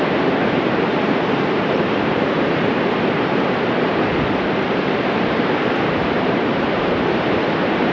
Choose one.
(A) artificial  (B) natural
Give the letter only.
A